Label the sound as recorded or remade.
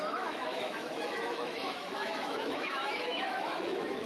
remade